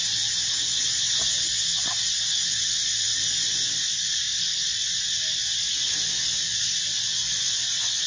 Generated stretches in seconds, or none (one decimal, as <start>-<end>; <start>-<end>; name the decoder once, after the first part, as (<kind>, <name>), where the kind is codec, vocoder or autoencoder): none